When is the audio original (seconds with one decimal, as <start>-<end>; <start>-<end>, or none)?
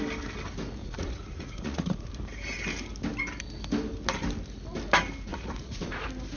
0.0-0.8; 2.1-5.3; 6.0-6.4